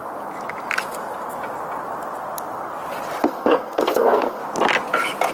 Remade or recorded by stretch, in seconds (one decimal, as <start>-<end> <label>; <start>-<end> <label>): 0.0-3.2 recorded; 3.2-4.4 remade; 4.4-5.3 recorded